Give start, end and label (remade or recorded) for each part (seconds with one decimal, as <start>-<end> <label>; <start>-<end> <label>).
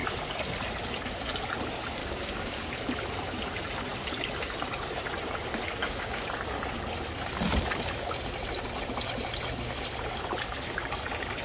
0.0-2.0 recorded; 2.0-2.7 remade; 2.7-5.8 recorded; 5.8-6.3 remade; 6.3-11.4 recorded